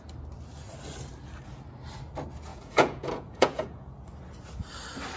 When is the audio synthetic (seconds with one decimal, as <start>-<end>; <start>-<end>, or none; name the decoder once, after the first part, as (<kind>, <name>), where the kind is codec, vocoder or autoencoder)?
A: 2.5-3.9 (vocoder, Vocos)